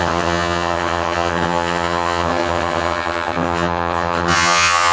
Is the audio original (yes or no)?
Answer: no